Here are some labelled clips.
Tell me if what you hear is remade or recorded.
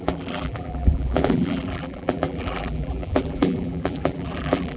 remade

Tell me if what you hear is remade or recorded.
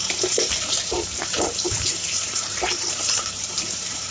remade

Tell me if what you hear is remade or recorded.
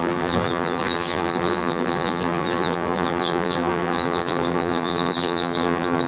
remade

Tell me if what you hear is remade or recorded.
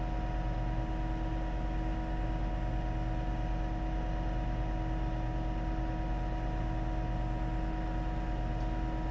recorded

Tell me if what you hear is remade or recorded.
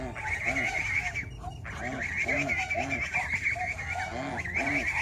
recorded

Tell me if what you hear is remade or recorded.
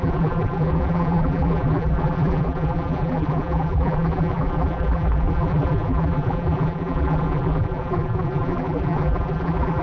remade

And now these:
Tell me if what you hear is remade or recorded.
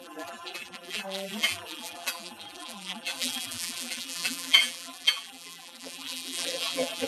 remade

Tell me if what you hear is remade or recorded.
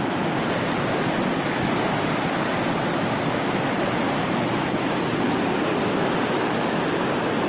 recorded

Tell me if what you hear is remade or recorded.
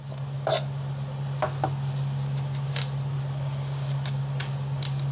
recorded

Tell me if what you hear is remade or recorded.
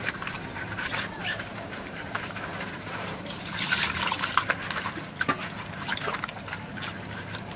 remade